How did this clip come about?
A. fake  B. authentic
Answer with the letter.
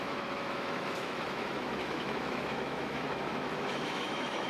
A